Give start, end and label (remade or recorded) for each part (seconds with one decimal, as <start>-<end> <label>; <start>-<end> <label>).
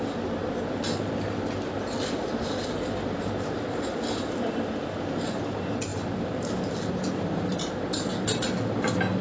0.0-9.2 recorded